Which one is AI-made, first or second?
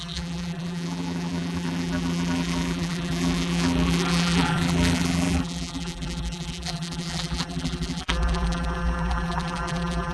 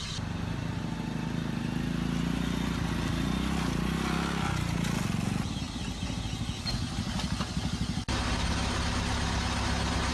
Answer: first